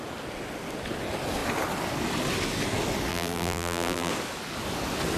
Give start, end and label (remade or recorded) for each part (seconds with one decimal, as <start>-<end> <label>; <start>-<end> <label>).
0.0-3.1 recorded; 3.1-4.1 remade; 4.1-5.2 recorded